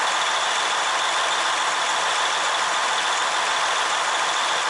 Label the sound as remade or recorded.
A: recorded